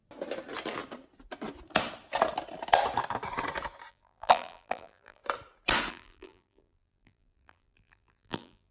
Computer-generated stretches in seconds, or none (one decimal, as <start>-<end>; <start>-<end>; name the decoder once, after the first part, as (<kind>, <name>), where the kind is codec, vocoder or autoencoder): 3.9-5.2 (vocoder, BigVGAN v2); 5.9-8.7